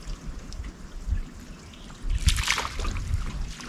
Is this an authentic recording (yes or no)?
yes